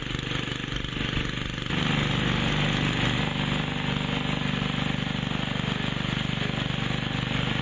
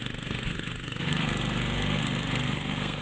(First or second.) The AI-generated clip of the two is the second